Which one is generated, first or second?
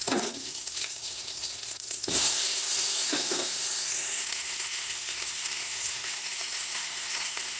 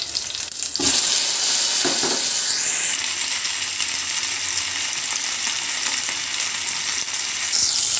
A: first